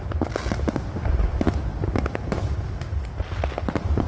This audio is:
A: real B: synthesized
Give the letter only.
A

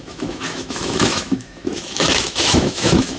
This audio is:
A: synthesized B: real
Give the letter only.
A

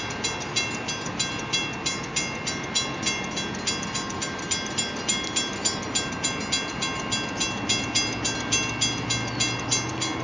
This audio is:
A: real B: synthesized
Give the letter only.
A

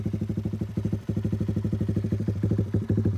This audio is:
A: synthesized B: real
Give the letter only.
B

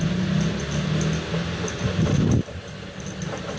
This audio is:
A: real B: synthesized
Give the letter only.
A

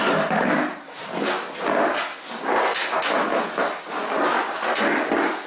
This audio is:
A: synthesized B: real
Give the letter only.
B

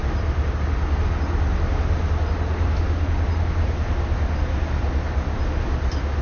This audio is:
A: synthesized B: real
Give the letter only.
B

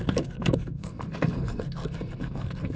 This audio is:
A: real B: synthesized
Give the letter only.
B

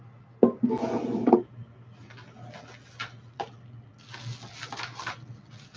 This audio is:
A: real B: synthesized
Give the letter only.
A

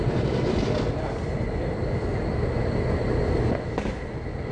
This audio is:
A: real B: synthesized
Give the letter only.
A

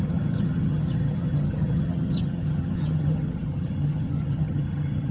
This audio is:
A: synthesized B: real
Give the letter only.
A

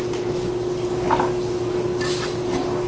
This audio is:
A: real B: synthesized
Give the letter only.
A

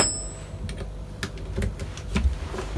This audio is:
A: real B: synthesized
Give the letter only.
A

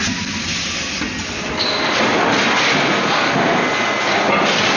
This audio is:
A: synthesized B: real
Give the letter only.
B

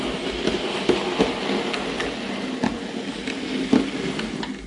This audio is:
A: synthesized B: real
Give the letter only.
B